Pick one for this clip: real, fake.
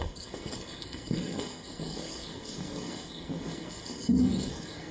fake